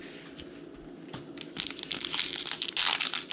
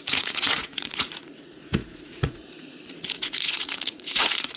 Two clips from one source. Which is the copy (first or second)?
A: second